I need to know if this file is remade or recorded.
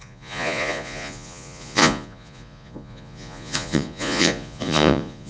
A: remade